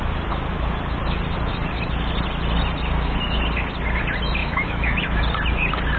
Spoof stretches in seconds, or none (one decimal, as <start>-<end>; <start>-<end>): 4.4-5.2